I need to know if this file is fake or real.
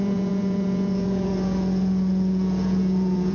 fake